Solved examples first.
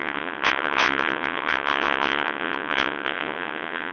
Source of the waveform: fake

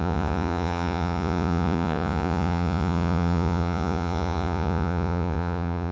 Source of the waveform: fake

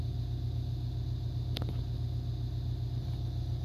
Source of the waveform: real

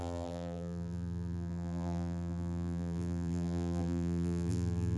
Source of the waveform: fake